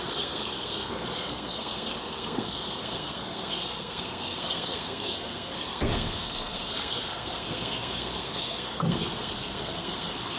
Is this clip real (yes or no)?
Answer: no